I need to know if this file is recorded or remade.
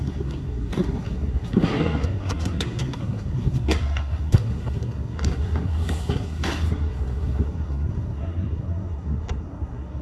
remade